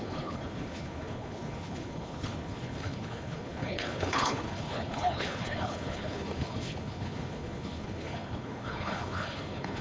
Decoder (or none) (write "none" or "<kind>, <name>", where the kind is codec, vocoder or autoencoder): codec, HILCodec